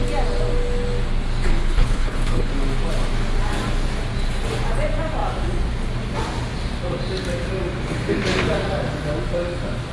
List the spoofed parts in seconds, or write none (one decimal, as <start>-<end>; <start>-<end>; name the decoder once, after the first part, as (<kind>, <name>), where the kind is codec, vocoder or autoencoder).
1.5-2.5 (codec, HILCodec)